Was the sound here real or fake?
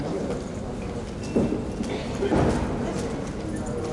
real